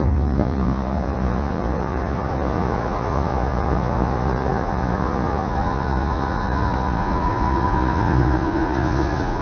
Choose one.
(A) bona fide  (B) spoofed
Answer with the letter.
B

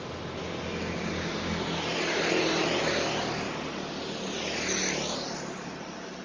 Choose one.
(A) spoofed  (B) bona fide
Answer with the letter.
B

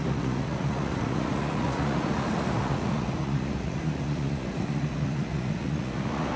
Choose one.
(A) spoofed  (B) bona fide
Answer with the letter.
A